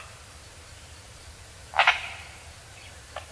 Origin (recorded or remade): remade